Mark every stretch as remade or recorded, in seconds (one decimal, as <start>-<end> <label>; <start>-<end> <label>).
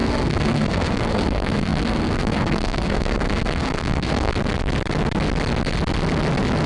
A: 0.0-4.3 remade; 4.3-6.7 recorded